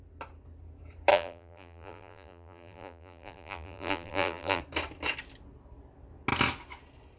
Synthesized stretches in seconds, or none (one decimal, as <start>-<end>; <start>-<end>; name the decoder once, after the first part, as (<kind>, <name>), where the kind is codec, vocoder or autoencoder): 1.1-4.6 (vocoder, BigVGAN v2)